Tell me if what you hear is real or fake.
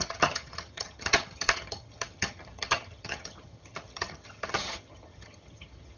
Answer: fake